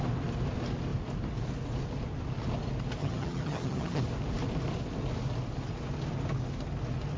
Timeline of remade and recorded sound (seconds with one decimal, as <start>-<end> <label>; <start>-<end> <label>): 0.0-3.0 recorded; 3.0-4.0 remade; 4.0-7.2 recorded